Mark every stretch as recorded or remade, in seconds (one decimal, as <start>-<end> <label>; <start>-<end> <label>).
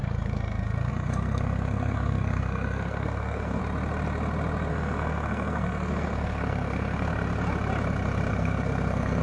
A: 0.0-3.6 remade; 3.6-4.7 recorded; 4.7-7.1 remade; 7.1-8.3 recorded; 8.3-9.2 remade